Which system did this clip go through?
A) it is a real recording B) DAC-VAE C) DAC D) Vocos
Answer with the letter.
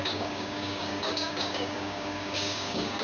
C